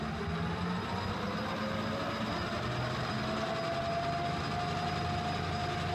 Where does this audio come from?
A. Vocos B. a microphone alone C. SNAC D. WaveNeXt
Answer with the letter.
B